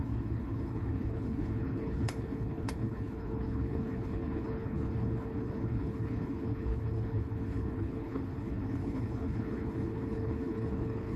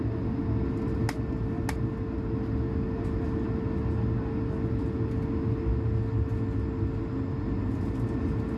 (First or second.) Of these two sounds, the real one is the second